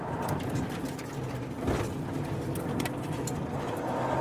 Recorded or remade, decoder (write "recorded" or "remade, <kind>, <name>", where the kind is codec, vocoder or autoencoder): recorded